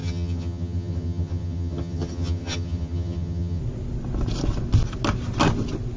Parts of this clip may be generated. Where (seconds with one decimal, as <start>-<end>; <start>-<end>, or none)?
0.0-3.6